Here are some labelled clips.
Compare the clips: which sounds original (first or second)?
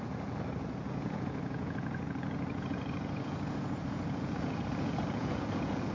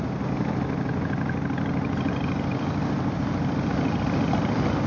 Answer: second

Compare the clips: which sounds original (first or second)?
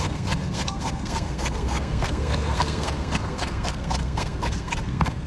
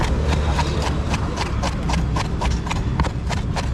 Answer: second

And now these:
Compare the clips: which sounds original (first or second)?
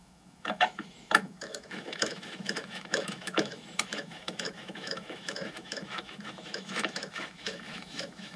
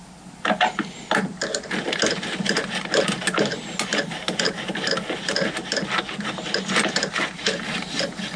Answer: second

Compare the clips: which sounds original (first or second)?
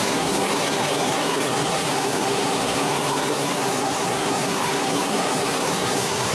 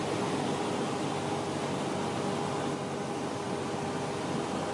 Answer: second